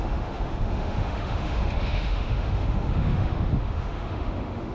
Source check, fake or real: fake